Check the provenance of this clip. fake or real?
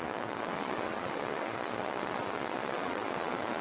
fake